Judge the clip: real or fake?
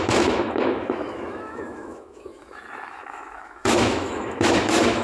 fake